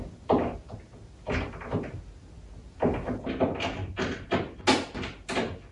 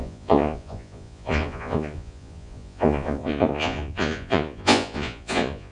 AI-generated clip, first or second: second